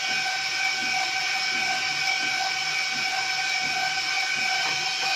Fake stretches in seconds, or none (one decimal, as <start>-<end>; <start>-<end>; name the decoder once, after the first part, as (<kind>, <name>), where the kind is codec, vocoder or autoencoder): none